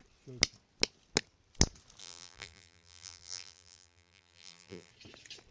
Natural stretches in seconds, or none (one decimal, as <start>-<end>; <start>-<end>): 0.0-2.0; 4.9-5.5